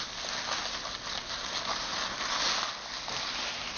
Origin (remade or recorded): recorded